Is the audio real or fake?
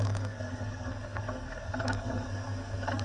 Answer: fake